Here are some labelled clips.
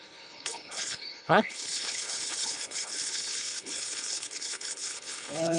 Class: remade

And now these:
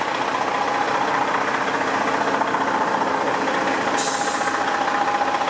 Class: recorded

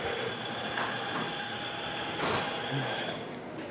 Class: recorded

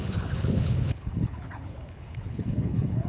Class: remade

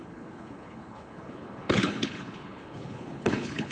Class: remade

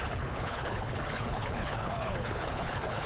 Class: remade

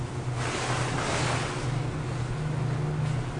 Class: recorded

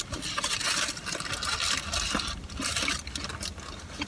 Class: recorded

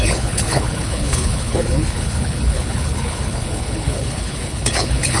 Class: remade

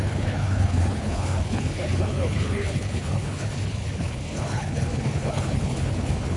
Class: remade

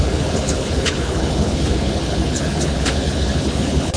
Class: remade